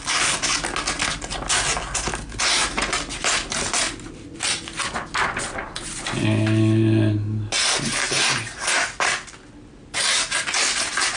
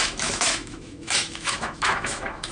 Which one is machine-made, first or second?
second